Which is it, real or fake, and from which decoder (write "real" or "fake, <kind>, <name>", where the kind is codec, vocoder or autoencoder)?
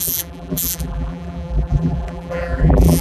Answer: fake, vocoder, BigVGAN v2